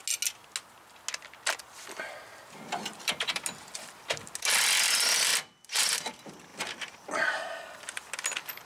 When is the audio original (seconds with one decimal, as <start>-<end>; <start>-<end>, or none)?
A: 0.0-2.3; 3.4-6.5; 7.1-8.7